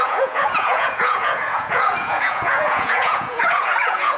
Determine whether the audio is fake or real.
fake